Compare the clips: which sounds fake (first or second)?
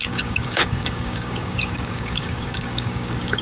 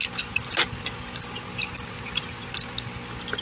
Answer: first